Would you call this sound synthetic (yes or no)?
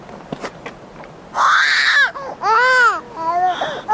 no